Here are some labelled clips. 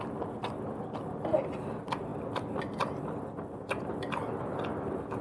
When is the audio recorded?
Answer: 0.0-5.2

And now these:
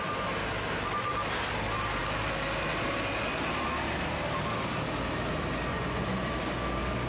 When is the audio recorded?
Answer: 0.0-5.7; 6.3-7.1

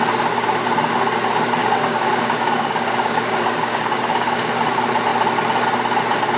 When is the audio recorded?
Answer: 0.0-1.6; 4.5-6.4

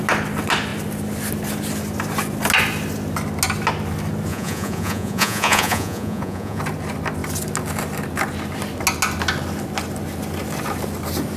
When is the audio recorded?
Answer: 0.0-4.3; 6.6-11.4

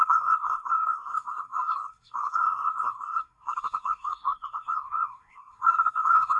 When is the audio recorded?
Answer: none

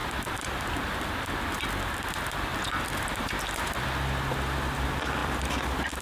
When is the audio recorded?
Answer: 0.0-5.2

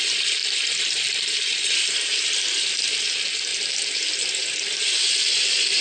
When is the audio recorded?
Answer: 0.0-5.8